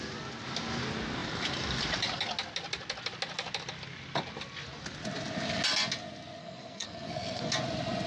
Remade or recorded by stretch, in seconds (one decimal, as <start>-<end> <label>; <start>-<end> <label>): 0.0-6.4 recorded; 6.4-7.5 remade; 7.5-8.1 recorded